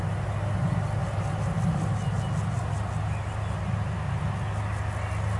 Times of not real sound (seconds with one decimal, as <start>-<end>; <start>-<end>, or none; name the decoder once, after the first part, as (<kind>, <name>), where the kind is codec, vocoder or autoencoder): none